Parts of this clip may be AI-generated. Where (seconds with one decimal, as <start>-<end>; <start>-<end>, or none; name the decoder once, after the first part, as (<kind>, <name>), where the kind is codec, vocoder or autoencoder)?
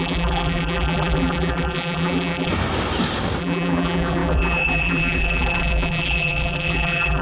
0.0-2.5 (vocoder, BigVGAN v2); 3.4-7.2